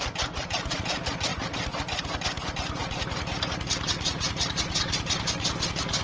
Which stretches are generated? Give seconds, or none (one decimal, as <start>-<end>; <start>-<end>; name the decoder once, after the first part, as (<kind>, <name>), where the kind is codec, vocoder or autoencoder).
none